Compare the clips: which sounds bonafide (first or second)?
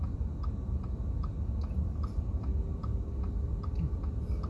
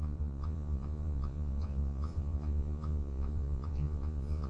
first